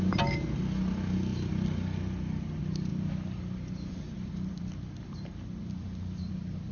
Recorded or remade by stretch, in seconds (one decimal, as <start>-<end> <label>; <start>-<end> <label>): 0.0-2.9 recorded; 2.9-6.3 remade; 6.3-6.7 recorded